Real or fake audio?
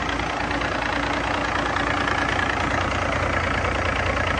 real